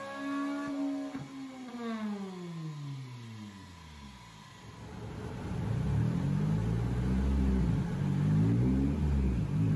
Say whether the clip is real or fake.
real